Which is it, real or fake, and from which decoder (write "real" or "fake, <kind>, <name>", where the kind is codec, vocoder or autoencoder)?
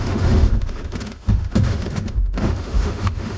fake, autoencoder, DAC-VAE